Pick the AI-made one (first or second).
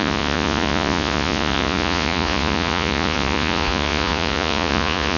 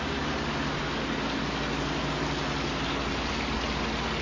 first